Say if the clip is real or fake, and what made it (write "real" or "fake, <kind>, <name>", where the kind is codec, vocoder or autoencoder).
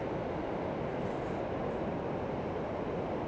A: real